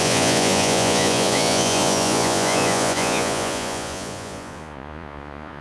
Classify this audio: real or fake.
fake